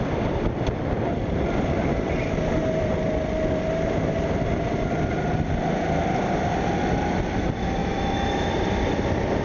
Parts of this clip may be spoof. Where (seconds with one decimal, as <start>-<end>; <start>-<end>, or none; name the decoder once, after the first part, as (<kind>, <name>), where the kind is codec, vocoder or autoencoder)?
7.8-8.5 (autoencoder, DAC-VAE)